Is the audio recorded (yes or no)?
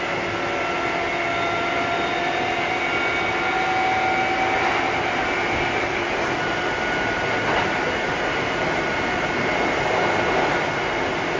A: yes